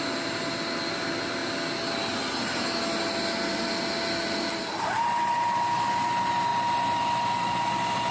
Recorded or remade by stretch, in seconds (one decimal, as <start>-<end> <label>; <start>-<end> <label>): 0.0-8.1 recorded